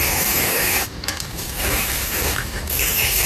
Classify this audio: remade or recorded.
remade